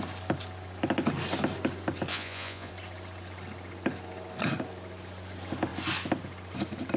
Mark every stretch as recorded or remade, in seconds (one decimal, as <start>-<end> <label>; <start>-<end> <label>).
0.0-2.1 recorded; 2.1-2.7 remade; 2.7-7.0 recorded

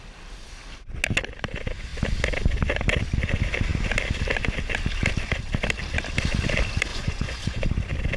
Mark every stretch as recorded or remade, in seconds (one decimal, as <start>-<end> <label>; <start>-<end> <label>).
0.0-6.9 recorded; 6.9-7.7 remade; 7.7-8.2 recorded

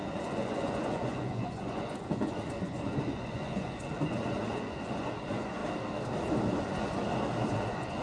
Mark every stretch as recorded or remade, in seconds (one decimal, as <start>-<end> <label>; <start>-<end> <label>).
0.0-5.6 remade; 5.6-6.6 recorded; 6.6-7.0 remade; 7.0-7.5 recorded; 7.5-8.0 remade